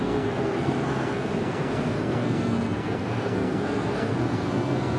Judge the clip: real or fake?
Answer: fake